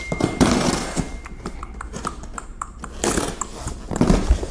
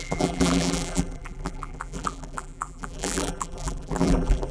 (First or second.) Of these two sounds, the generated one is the second